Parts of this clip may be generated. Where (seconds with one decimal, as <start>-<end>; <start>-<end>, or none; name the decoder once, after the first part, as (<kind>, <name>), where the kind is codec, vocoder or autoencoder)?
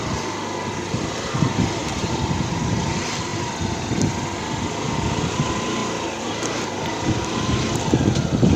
1.8-2.8 (vocoder, BigVGAN v2)